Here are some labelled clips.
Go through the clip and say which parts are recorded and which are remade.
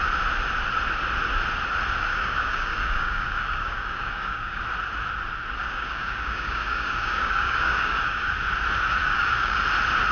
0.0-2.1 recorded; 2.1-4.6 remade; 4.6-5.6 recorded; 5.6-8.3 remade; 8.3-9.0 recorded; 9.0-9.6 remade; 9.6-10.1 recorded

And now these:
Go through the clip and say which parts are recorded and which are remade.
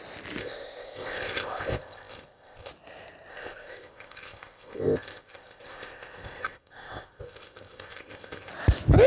0.0-0.4 recorded; 0.4-2.7 remade; 2.7-3.3 recorded; 3.3-8.5 remade; 8.5-9.1 recorded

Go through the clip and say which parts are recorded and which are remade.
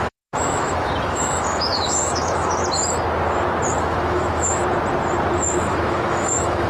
0.0-2.6 remade; 2.6-3.8 recorded; 3.8-4.6 remade; 4.6-5.7 recorded; 5.7-6.7 remade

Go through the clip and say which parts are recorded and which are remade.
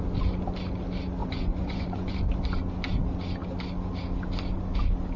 0.0-1.2 recorded; 1.2-2.2 remade; 2.2-5.2 recorded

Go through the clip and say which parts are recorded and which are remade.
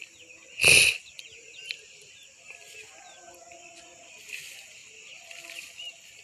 0.0-1.0 recorded; 1.0-2.5 remade; 2.5-4.8 recorded; 4.8-6.2 remade